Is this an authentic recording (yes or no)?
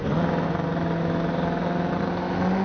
yes